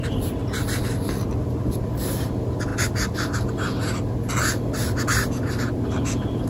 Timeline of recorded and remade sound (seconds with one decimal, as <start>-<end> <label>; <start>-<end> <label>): 0.0-6.5 recorded